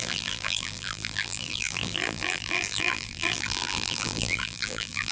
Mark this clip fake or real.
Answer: fake